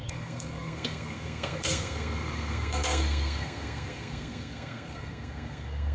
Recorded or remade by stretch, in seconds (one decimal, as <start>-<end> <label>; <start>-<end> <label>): 0.0-5.9 remade

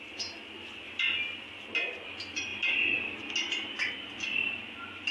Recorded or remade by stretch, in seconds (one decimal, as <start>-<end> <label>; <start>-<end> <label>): 0.0-5.1 recorded

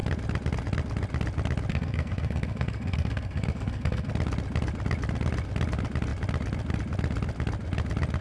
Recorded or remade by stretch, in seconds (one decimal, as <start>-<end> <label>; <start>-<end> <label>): 0.0-1.7 recorded; 1.7-4.1 remade; 4.1-8.2 recorded

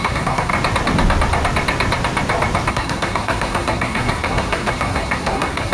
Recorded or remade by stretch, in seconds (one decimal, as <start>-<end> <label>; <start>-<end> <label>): 0.0-0.5 remade; 0.5-2.7 recorded; 2.7-5.7 remade

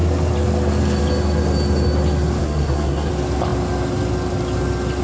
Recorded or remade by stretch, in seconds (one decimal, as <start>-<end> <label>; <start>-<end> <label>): 0.0-2.4 recorded; 2.4-3.1 remade; 3.1-5.0 recorded

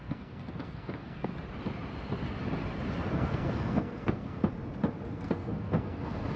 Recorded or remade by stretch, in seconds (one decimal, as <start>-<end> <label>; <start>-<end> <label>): 0.0-1.3 remade; 1.3-3.1 recorded; 3.1-4.5 remade; 4.5-5.1 recorded; 5.1-6.4 remade

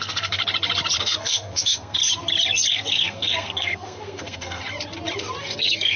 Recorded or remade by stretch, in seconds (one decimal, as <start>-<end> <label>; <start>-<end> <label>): 0.0-0.4 remade; 0.4-1.0 recorded; 1.0-2.0 remade; 2.0-2.7 recorded; 2.7-4.6 remade; 4.6-5.4 recorded; 5.4-6.0 remade